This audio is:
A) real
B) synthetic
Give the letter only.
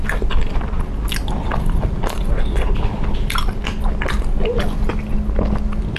A